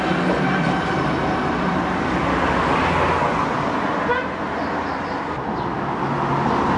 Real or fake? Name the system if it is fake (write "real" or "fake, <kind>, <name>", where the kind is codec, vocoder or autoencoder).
real